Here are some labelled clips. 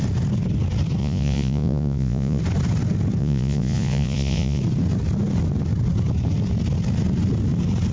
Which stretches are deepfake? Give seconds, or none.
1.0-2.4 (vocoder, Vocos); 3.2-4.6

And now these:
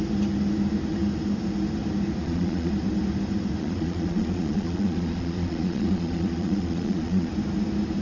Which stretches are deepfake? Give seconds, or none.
2.2-2.7 (vocoder, Vocos); 3.6-7.3

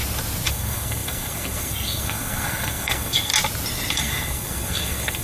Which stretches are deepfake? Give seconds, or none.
0.5-3.3 (codec, SNAC); 3.9-5.2

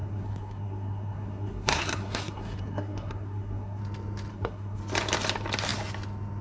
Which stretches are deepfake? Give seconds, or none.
0.0-3.8 (codec, SNAC); 4.3-4.8

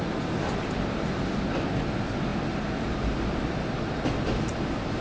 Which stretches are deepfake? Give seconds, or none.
none